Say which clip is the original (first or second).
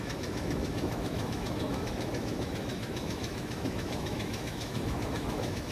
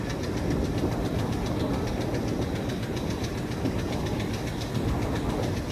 second